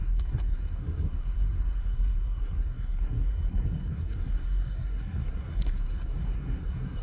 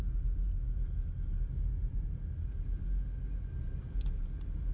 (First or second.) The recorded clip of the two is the second